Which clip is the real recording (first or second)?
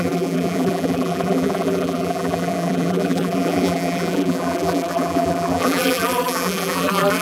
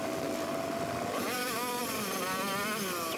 second